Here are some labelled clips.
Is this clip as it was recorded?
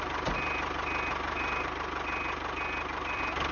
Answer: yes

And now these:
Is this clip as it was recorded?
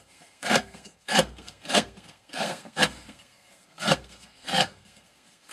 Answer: no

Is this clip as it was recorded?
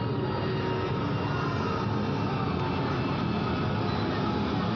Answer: yes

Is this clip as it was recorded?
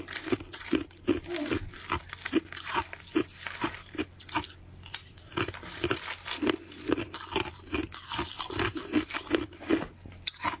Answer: yes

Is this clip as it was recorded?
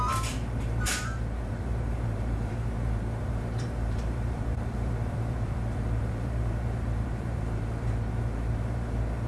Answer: no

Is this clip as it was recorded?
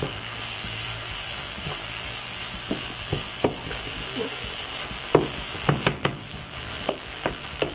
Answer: no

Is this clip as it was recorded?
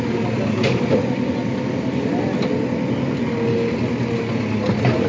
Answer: yes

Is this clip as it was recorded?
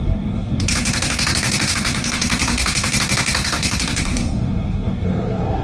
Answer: no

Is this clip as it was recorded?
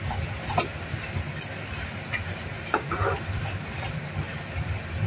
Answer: yes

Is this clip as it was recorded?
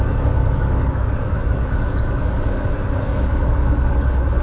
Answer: no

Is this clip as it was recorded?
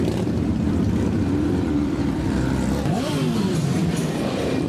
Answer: no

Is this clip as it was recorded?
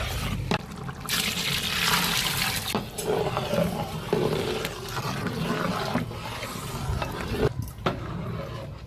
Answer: yes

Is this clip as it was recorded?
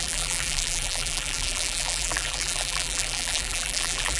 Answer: no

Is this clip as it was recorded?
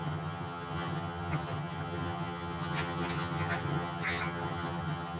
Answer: no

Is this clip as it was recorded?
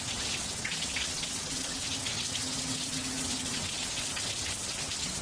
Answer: no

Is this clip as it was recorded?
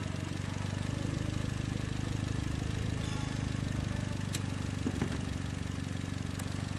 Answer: yes